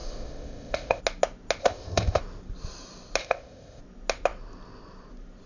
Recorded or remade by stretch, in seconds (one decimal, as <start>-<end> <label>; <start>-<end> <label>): 0.0-1.0 remade; 1.0-1.6 recorded; 1.6-2.2 remade; 2.2-3.2 recorded; 3.2-3.8 remade; 3.8-5.5 recorded